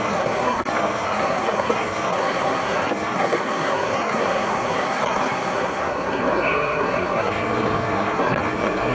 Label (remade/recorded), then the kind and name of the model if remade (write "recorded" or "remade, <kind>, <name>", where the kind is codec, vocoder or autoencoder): remade, codec, SNAC